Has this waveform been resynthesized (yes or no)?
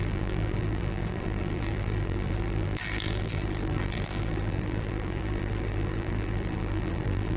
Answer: yes